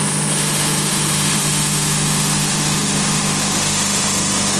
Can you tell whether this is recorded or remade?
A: remade